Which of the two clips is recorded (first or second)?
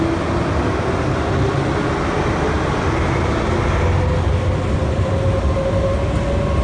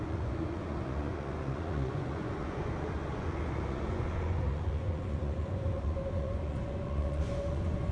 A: first